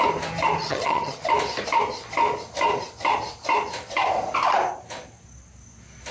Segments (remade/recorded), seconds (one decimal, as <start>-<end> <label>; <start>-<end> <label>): 0.0-0.6 recorded; 0.6-1.2 remade; 1.2-6.1 recorded